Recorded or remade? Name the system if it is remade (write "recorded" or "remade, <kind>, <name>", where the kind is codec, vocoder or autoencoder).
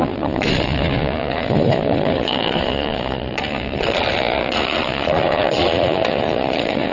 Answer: remade, vocoder, Vocos